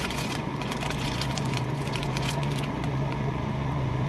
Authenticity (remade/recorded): remade